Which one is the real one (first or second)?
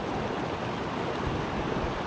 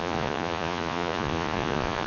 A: first